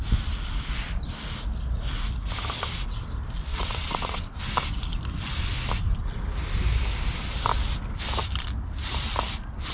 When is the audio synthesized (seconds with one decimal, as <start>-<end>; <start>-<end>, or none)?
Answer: 3.5-4.4